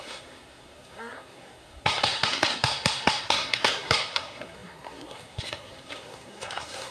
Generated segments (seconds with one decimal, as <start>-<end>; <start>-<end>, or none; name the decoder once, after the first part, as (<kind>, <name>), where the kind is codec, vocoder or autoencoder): 0.0-6.9 (codec, SNAC)